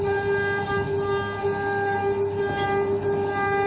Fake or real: real